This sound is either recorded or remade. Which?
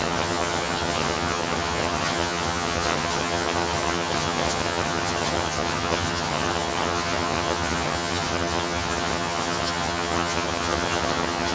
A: remade